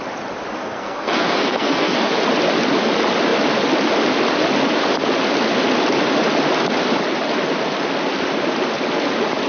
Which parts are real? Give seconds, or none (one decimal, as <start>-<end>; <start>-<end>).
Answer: 0.0-0.6; 2.1-9.5